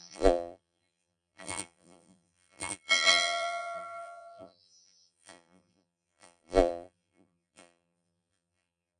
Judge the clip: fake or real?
fake